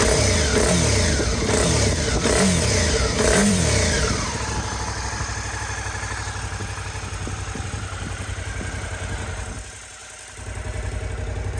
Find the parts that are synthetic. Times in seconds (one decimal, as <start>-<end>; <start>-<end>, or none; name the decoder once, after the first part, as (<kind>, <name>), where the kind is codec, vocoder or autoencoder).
3.4-4.3 (vocoder, BigVGAN v2)